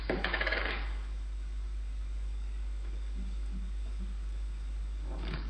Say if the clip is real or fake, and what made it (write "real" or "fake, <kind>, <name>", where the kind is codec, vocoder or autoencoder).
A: fake, codec, DAC